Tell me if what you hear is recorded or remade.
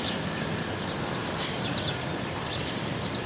recorded